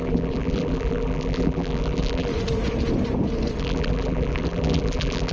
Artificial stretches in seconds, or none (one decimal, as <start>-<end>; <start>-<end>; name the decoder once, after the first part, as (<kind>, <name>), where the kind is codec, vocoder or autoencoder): 0.0-2.3 (vocoder, BigVGAN v2); 3.6-5.3